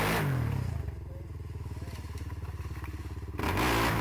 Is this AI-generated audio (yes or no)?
no